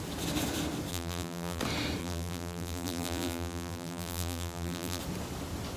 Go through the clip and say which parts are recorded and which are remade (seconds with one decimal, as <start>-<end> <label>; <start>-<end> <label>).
0.0-0.9 recorded; 0.9-1.6 remade; 1.6-2.0 recorded; 2.0-5.0 remade; 5.0-5.8 recorded